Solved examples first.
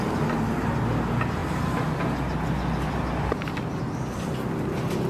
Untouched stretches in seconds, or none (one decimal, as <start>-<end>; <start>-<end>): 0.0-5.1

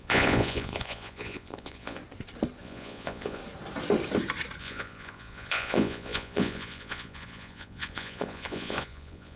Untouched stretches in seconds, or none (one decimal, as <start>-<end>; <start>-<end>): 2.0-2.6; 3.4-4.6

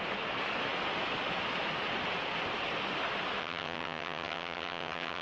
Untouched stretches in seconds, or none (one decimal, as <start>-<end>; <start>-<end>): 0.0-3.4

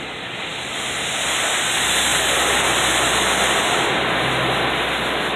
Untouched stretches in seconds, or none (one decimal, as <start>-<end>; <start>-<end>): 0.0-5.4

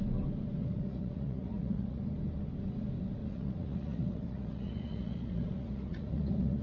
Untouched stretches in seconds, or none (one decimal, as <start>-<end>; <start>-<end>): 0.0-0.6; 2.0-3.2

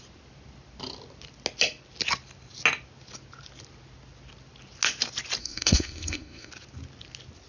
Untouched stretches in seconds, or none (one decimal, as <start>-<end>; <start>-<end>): 0.0-5.4; 6.5-7.5

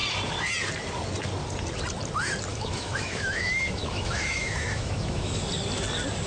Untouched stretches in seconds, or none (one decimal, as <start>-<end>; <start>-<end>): 0.0-2.5; 5.4-6.3

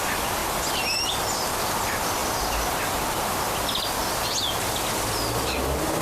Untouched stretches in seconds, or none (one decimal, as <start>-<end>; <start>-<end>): 0.0-6.0